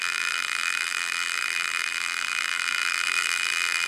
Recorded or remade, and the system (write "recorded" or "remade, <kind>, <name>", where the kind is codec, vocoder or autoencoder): remade, vocoder, BigVGAN v2